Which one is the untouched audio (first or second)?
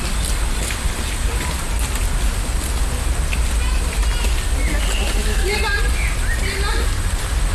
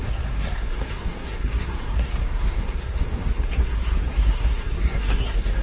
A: first